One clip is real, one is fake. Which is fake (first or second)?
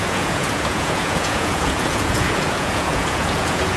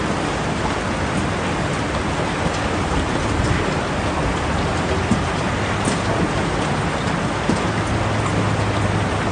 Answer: first